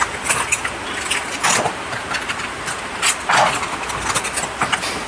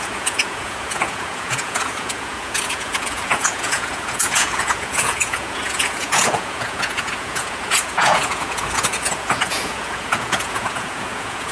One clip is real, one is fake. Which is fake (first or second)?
second